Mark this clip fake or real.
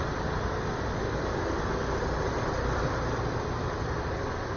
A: real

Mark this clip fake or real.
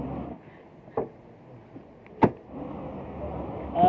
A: real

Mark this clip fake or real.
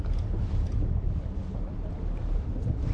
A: real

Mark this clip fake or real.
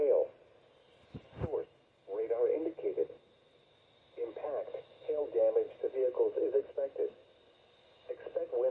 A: real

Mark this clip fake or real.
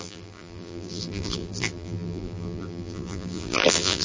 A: fake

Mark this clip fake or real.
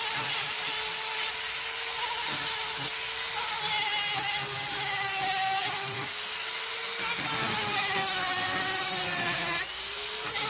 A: real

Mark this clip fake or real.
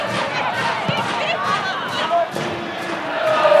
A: real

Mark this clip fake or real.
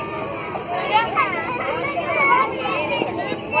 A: real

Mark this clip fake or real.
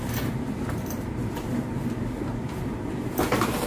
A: fake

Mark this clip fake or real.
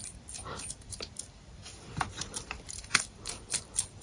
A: fake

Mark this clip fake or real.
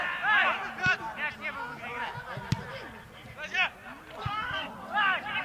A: real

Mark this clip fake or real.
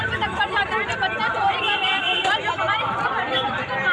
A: fake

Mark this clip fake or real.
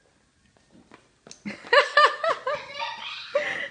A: real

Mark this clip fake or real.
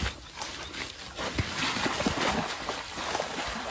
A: real